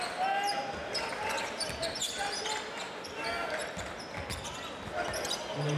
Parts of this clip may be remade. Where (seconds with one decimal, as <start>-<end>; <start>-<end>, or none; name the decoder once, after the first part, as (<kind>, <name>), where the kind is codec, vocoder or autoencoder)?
none